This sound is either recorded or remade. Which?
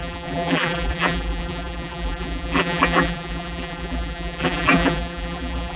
remade